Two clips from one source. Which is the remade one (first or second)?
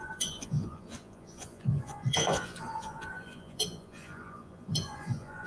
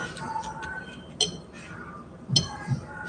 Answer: first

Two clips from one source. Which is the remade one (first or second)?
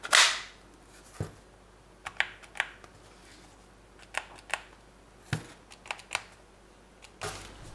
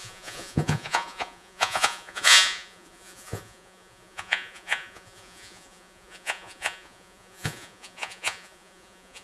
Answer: second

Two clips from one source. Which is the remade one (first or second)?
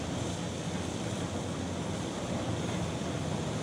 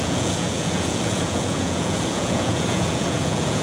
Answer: second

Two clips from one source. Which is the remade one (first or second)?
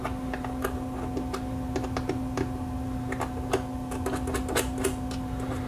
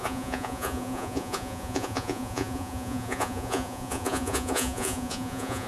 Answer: second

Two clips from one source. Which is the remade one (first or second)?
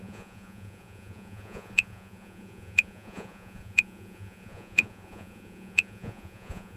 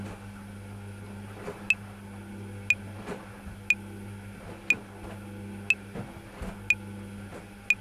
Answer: first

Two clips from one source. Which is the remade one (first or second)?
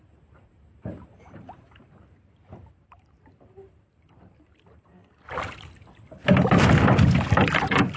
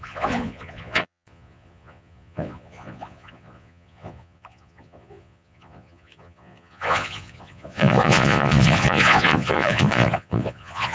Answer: second